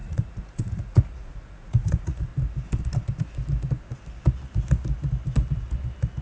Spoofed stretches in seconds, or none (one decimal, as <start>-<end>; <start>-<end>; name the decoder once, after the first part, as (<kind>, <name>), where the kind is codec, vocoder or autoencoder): 0.0-2.3 (vocoder, Vocos)